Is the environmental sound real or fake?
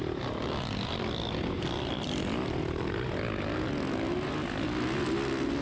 real